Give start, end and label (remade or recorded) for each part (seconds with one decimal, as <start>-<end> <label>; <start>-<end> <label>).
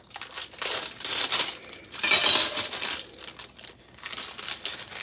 0.0-1.5 recorded; 1.5-3.8 remade; 3.8-5.0 recorded